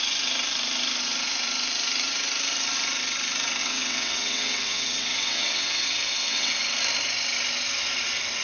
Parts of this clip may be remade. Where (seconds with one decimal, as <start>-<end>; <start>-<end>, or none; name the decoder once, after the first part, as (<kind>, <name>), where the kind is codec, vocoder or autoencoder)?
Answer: 3.6-6.6 (vocoder, WaveNeXt)